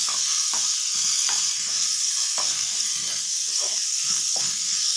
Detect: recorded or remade remade